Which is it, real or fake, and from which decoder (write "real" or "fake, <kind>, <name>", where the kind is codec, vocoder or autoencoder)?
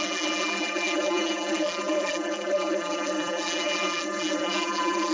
fake, vocoder, BigVGAN v2